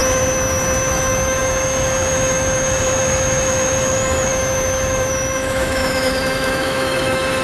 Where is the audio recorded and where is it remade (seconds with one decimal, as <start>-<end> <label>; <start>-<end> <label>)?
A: 0.0-0.9 recorded; 0.9-7.4 remade